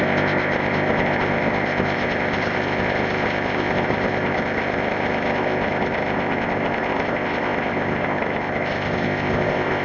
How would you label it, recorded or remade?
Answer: remade